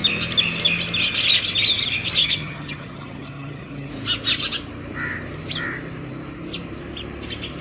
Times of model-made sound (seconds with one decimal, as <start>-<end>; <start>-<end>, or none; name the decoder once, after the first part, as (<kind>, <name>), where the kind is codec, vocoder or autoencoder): 2.2-3.9 (vocoder, HiFi-GAN)